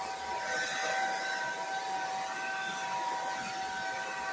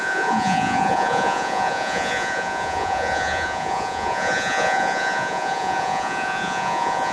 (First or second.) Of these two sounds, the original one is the first